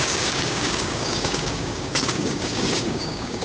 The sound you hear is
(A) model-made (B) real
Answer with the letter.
A